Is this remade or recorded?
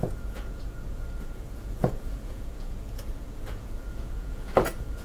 remade